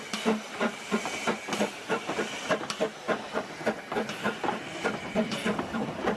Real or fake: real